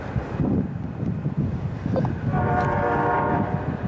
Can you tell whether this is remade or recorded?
remade